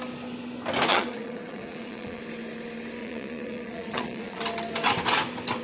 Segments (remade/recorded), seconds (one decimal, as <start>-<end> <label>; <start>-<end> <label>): 0.0-0.9 recorded; 0.9-2.2 remade; 2.2-3.0 recorded; 3.0-4.4 remade; 4.4-5.6 recorded